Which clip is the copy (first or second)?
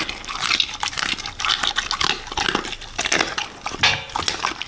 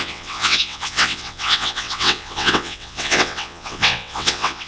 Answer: second